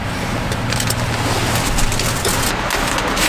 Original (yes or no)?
yes